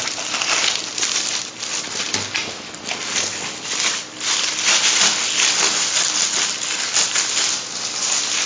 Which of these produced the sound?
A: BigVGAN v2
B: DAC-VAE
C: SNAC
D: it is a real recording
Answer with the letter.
D